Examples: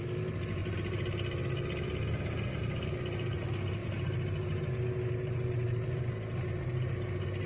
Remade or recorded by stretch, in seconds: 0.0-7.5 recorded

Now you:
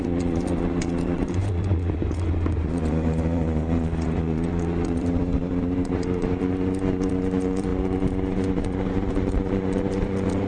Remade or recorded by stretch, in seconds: 0.0-10.5 remade

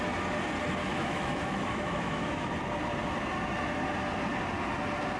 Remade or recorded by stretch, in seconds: 0.0-0.8 recorded; 0.8-2.5 remade; 2.5-5.2 recorded